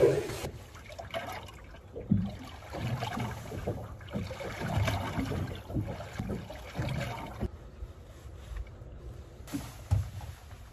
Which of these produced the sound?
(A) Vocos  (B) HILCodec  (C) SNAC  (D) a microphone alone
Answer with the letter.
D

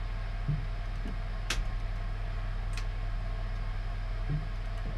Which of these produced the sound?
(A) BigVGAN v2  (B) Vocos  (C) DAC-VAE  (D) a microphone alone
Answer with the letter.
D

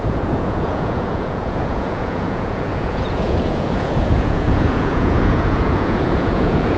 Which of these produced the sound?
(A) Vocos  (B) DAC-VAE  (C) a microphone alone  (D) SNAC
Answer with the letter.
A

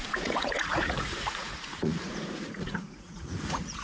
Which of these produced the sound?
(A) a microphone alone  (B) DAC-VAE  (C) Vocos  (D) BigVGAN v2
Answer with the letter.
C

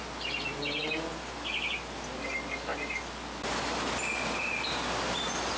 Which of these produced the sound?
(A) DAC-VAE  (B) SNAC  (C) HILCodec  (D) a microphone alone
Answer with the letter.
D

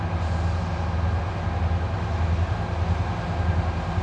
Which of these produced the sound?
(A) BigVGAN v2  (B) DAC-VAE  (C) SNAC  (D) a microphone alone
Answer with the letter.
D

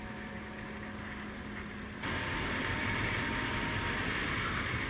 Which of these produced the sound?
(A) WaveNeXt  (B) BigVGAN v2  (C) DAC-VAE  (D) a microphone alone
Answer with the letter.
D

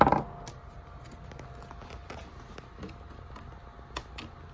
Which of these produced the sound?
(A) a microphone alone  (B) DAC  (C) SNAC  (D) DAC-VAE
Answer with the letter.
A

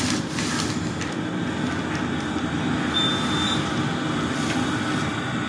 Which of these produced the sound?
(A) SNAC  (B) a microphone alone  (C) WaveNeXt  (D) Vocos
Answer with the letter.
B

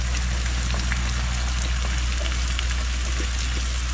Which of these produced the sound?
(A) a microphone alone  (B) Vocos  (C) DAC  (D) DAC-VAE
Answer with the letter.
A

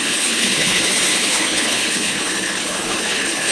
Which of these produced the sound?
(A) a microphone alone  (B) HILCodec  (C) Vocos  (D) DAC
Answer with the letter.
B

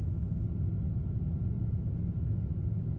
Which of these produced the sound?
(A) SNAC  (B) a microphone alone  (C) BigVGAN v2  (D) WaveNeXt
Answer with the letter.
B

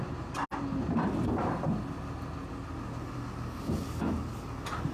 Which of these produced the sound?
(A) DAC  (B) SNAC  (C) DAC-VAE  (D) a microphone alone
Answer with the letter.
D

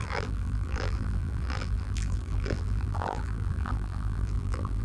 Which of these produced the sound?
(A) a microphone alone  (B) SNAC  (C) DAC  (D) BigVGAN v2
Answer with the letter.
D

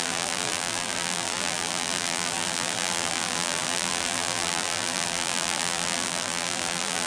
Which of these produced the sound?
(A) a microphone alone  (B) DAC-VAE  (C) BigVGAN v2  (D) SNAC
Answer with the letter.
C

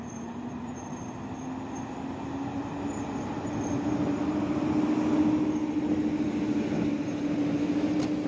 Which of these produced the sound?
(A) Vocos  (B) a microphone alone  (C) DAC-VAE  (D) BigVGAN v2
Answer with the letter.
B